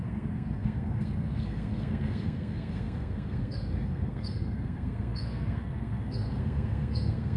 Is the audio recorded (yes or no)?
no